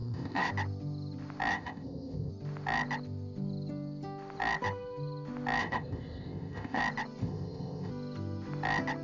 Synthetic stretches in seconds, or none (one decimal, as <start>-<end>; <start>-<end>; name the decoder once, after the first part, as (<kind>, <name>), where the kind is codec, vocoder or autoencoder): 0.0-0.5 (codec, ZipCodec); 1.5-2.3; 5.6-6.8; 7.2-7.9